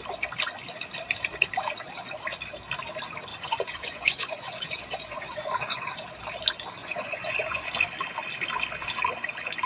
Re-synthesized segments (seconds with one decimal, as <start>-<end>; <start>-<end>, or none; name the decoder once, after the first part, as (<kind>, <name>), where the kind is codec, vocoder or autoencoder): 3.3-5.9 (vocoder, Vocos); 6.8-7.7

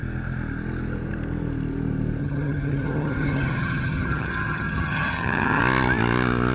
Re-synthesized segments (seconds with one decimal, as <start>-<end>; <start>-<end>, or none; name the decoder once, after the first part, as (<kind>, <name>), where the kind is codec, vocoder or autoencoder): 2.2-5.6 (vocoder, HiFi-GAN)

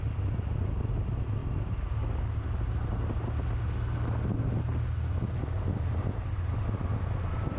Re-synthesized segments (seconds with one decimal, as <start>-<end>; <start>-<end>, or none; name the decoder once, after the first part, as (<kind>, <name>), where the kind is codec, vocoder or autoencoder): none

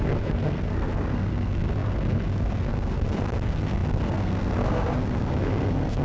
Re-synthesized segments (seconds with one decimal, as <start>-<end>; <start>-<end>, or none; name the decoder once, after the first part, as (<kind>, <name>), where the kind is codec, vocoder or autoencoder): 0.0-6.0 (codec, SNAC)

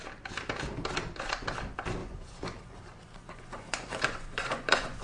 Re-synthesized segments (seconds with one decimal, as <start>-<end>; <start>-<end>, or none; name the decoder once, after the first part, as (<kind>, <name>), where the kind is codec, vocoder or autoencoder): 2.0-5.0 (vocoder, Vocos)

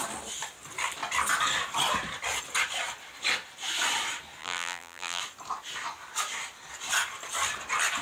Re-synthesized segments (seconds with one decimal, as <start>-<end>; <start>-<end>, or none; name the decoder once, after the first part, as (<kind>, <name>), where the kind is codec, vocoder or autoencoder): 4.4-5.2 (vocoder, BigVGAN v2)

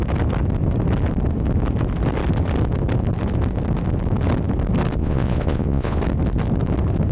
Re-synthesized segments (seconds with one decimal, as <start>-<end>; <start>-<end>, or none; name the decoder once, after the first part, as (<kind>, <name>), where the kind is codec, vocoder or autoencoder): 5.0-6.0 (vocoder, Vocos)

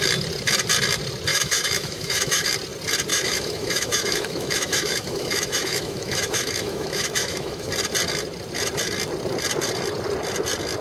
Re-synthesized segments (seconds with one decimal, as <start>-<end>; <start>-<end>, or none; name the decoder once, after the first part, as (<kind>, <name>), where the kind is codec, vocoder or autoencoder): 1.3-2.5 (autoencoder, DAC-VAE); 3.1-7.7